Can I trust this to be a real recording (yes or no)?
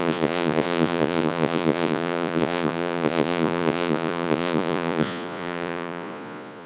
no